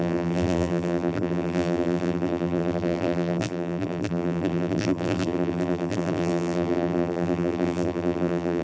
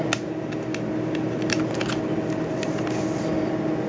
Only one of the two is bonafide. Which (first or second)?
second